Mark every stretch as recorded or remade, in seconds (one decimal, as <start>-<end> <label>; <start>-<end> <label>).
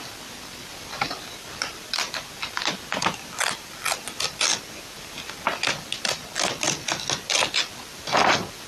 0.0-8.7 recorded